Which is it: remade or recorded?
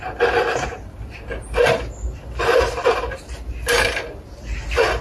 recorded